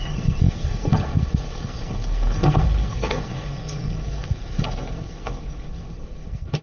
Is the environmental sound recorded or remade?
remade